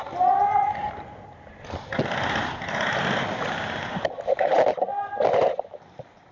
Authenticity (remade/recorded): recorded